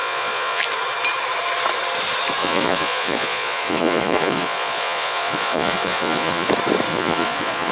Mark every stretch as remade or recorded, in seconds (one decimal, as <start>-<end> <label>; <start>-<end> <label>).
0.0-0.6 remade; 0.6-2.4 recorded; 2.4-6.5 remade; 6.5-6.9 recorded; 6.9-7.7 remade